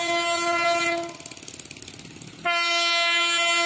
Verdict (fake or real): real